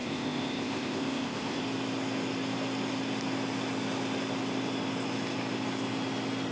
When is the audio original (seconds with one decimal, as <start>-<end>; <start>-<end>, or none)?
1.6-6.5